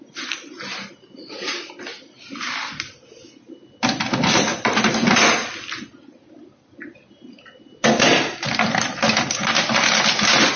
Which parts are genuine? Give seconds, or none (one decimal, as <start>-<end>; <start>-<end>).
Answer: 0.0-10.6